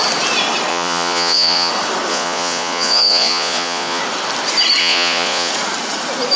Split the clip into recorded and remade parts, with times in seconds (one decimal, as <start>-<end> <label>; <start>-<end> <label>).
0.0-0.7 recorded; 0.7-1.7 remade; 1.7-2.1 recorded; 2.1-4.0 remade; 4.0-4.8 recorded; 4.8-5.5 remade; 5.5-6.4 recorded